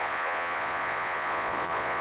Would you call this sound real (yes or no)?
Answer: no